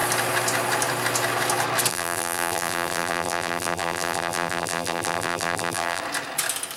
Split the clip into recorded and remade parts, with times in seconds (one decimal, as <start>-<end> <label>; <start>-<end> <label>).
0.0-1.9 recorded; 1.9-6.0 remade; 6.0-6.8 recorded